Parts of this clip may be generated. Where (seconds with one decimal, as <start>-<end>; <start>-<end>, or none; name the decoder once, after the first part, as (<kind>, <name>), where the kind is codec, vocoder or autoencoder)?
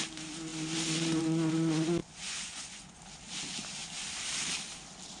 2.0-3.0 (vocoder, Vocos)